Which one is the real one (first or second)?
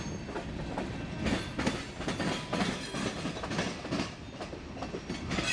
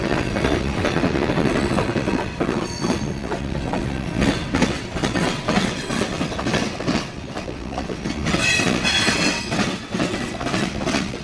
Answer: first